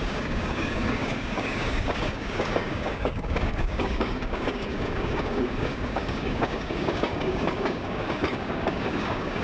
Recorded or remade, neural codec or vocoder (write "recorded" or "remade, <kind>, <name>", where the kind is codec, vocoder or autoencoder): remade, codec, DAC